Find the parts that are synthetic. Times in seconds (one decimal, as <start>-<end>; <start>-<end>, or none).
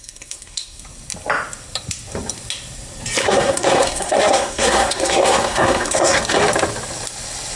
0.0-0.8; 3.2-6.2